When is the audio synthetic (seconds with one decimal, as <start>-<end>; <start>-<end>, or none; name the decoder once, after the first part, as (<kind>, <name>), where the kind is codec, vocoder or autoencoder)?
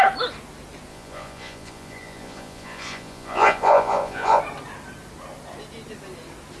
0.9-4.4 (vocoder, Vocos)